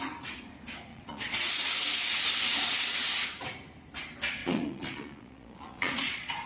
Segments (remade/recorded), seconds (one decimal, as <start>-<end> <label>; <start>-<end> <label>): 0.0-0.9 recorded; 0.9-1.4 remade; 1.4-4.4 recorded; 4.4-6.5 remade